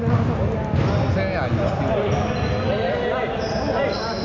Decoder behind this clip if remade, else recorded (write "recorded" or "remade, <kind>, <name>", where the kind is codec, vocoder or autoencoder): recorded